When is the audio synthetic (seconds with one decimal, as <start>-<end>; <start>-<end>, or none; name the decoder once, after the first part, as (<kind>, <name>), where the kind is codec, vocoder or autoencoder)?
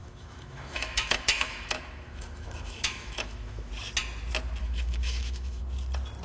0.0-3.7 (autoencoder, DAC-VAE); 4.6-5.6